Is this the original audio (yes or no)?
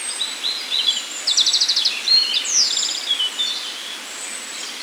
yes